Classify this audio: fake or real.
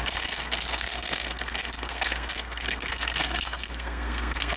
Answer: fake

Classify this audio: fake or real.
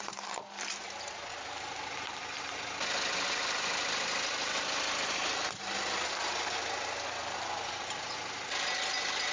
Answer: real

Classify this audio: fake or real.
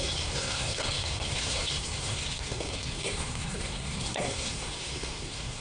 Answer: fake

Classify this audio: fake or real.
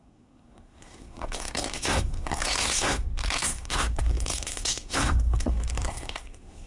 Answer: fake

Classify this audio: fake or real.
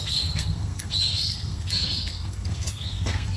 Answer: fake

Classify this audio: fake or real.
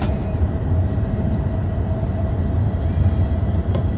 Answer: real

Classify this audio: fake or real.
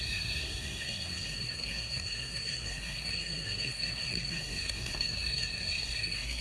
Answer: fake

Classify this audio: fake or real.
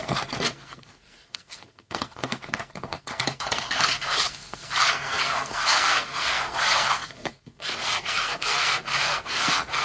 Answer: fake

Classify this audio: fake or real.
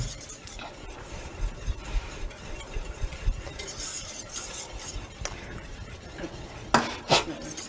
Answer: real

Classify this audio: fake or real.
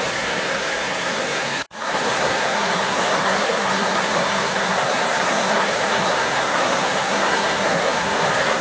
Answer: fake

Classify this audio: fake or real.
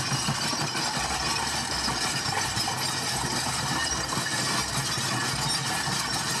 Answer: real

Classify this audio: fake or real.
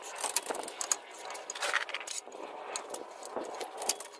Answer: real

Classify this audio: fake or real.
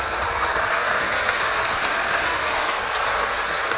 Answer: fake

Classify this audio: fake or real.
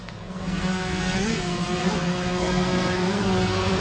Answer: fake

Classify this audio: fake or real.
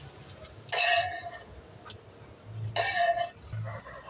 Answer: real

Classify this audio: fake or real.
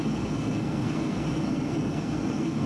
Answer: fake